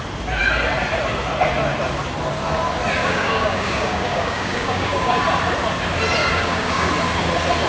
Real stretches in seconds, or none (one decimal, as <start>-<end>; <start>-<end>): 0.0-3.0; 5.2-6.2; 6.9-7.7